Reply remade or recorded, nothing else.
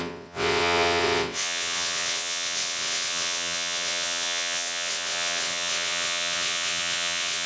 remade